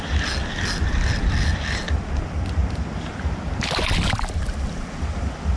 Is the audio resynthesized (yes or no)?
no